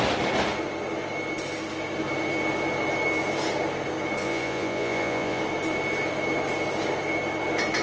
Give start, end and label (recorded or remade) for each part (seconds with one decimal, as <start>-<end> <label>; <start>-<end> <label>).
0.0-4.2 recorded; 4.2-5.4 remade; 5.4-7.8 recorded